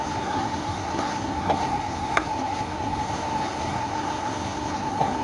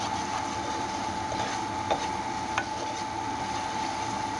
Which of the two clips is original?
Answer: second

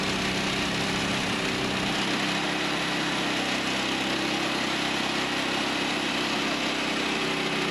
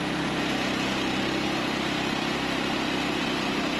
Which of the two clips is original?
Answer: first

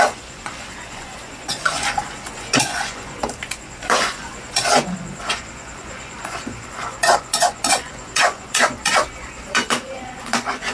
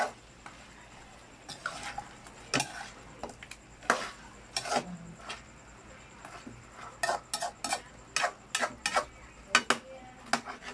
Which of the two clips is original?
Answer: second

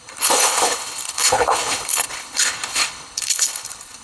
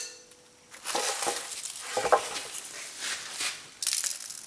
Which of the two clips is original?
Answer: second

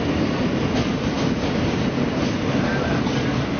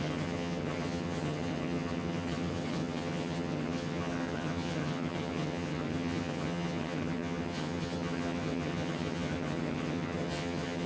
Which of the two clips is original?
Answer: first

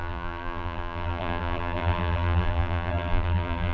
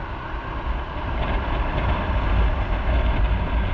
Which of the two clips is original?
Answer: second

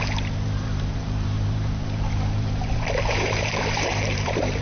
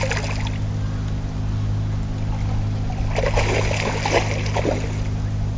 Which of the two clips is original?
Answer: second